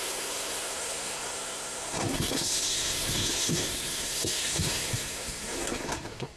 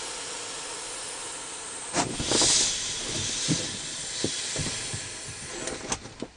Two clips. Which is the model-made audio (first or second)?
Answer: first